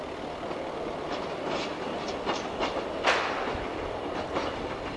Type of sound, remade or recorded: recorded